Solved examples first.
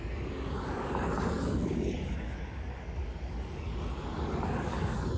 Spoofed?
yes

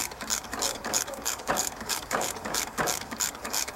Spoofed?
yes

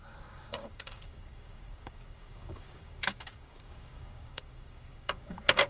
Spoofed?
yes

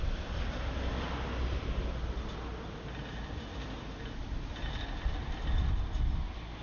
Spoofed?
no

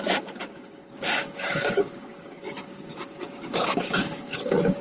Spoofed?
yes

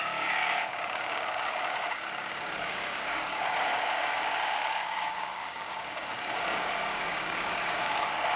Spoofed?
yes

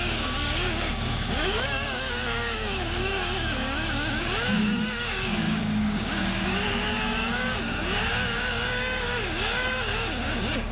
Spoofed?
yes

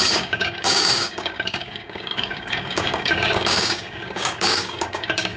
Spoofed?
yes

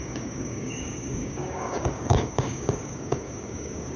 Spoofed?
yes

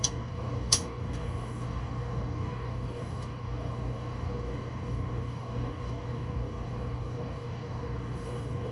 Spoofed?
yes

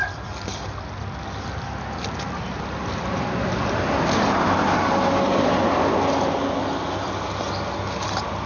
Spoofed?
no